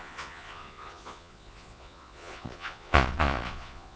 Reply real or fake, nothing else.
fake